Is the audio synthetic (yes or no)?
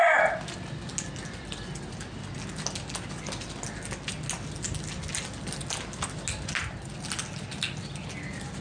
no